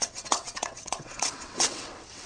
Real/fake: fake